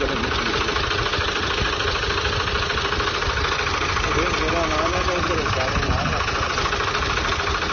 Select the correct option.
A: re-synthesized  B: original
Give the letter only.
B